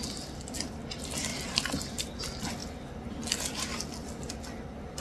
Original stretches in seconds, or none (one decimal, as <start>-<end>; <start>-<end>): 0.0-5.0